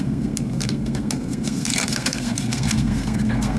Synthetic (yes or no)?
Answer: yes